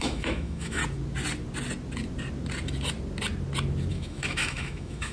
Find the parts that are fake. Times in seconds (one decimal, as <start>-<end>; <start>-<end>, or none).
0.0-0.8; 3.9-5.1